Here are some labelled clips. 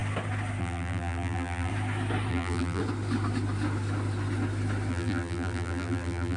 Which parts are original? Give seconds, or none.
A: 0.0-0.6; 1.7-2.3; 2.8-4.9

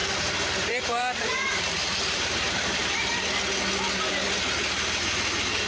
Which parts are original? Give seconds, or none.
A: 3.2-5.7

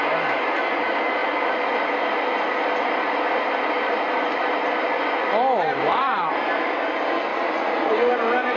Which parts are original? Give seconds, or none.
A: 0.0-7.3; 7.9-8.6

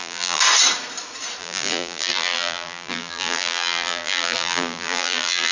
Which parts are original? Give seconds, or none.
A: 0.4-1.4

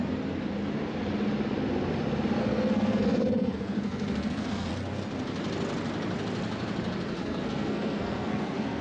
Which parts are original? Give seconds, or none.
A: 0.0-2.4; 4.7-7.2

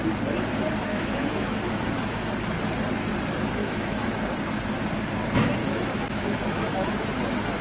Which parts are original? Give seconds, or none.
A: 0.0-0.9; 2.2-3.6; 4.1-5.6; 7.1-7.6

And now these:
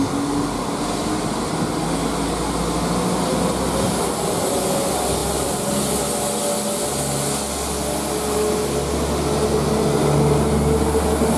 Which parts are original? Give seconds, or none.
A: 0.0-5.2; 6.0-11.4